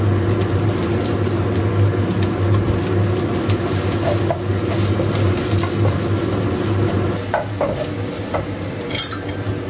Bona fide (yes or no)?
yes